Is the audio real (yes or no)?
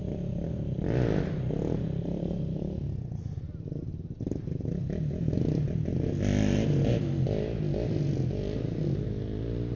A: yes